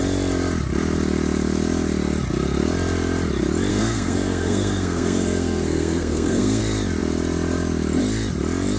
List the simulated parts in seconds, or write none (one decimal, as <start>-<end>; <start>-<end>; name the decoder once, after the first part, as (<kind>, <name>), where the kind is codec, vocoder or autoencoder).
3.7-6.6 (codec, SNAC)